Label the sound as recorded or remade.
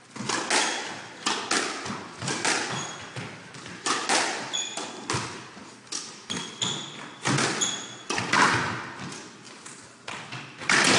recorded